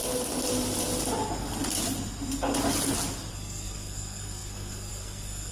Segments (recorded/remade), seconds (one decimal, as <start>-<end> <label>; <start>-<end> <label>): 0.0-3.3 recorded; 3.3-5.5 remade